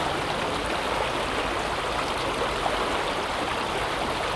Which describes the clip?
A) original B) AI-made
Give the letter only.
A